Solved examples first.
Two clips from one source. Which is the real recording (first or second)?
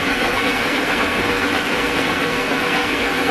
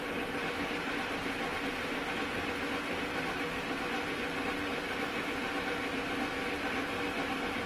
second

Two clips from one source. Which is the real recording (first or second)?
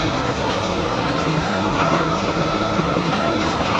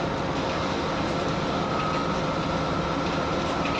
second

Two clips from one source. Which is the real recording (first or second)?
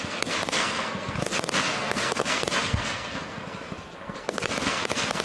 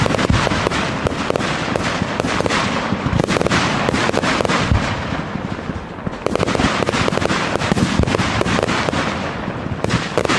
second